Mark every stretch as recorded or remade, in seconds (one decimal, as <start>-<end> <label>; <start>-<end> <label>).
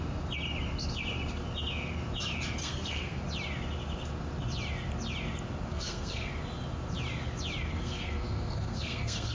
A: 0.0-2.6 recorded; 2.6-3.2 remade; 3.2-5.7 recorded; 5.7-6.3 remade; 6.3-7.7 recorded; 7.7-9.3 remade